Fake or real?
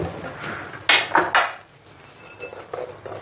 real